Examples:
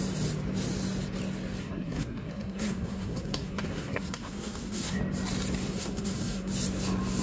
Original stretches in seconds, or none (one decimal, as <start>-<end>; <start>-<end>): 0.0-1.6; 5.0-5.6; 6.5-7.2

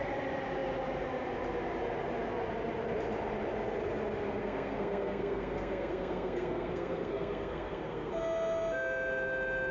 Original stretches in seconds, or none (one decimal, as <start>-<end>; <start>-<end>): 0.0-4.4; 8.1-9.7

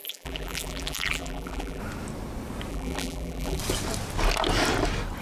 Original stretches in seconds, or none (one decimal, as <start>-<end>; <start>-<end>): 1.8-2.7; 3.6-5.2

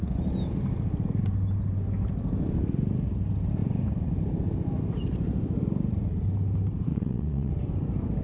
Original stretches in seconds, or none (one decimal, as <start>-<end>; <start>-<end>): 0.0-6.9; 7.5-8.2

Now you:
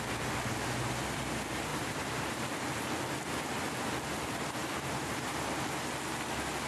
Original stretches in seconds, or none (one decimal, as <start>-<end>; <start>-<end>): 0.0-1.7; 2.4-4.6; 5.5-6.7